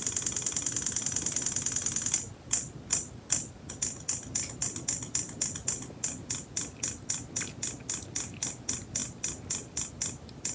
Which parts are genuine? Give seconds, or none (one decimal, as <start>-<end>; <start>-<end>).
0.0-10.5